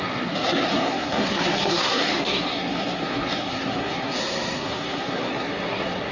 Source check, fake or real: fake